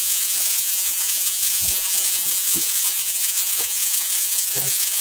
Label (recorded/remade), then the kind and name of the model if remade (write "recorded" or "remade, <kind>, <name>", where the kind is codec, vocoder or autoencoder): remade, vocoder, Vocos